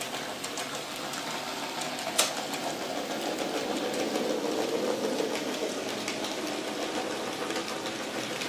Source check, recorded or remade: recorded